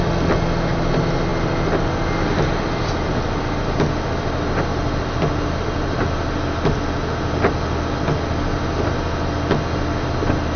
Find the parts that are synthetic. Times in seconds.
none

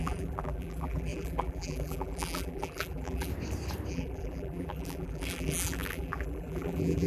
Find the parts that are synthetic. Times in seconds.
0.0-3.3 (vocoder, BigVGAN v2); 3.9-7.1

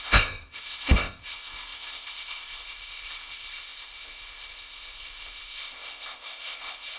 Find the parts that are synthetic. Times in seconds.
0.0-7.0 (codec, ZipCodec)

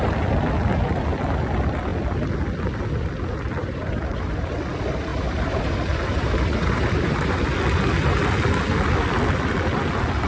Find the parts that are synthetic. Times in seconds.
3.6-4.6 (vocoder, BigVGAN v2); 5.1-7.4

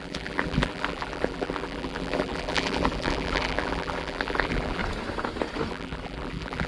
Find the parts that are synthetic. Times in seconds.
0.0-4.8 (vocoder, BigVGAN v2); 5.7-6.7

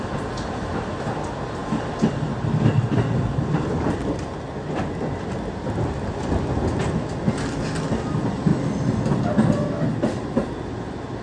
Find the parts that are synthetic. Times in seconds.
none